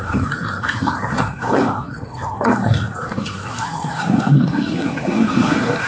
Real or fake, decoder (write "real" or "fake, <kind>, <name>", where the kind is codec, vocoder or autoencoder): fake, codec, SNAC